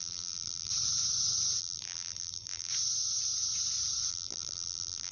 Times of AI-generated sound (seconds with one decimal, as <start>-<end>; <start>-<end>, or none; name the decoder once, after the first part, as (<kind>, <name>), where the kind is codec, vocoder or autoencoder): 0.0-0.7 (vocoder, BigVGAN v2); 1.6-2.7; 4.1-5.1

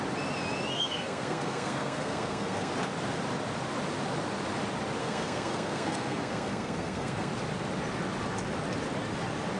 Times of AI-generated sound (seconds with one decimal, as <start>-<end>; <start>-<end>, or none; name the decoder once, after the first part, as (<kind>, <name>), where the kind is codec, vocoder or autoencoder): 0.7-2.7 (codec, SNAC); 5.0-7.3